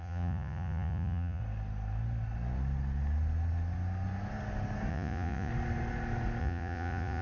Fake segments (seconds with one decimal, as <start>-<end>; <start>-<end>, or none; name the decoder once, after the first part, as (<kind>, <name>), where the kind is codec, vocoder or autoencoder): 0.0-1.4 (vocoder, Vocos); 4.9-5.5; 6.4-7.2